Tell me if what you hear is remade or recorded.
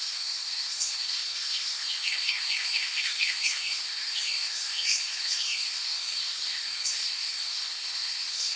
remade